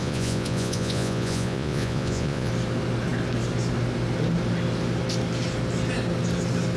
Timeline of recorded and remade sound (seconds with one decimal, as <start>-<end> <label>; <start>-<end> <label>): 0.0-2.5 remade; 2.5-6.8 recorded